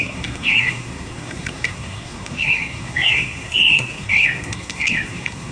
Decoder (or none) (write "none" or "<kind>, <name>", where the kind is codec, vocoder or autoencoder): codec, SNAC